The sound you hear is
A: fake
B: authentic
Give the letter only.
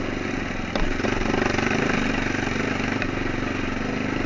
B